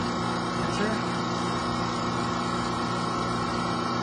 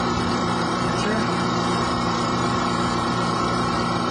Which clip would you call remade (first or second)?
second